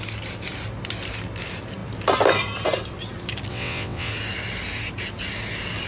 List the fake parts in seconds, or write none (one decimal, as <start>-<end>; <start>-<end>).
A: 3.5-4.1